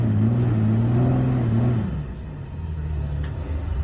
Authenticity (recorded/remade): recorded